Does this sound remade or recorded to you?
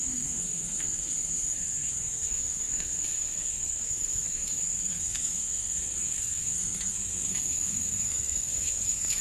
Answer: remade